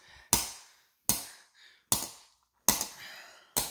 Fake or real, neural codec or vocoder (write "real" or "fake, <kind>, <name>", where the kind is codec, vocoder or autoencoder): real